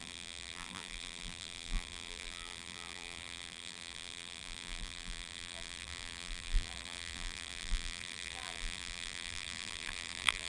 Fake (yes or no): yes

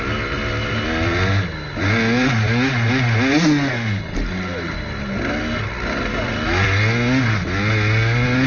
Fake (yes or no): no